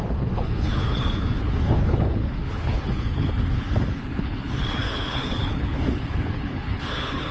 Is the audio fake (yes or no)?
yes